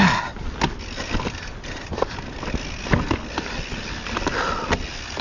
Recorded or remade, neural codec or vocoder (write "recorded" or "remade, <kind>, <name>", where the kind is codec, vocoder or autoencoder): recorded